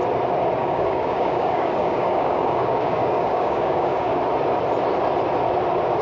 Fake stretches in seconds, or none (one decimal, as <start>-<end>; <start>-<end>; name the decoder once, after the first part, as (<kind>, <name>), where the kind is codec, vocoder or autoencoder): 0.6-4.2 (codec, DAC)